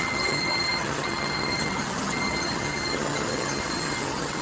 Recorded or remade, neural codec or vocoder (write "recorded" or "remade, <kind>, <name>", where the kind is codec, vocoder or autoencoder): remade, vocoder, HiFi-GAN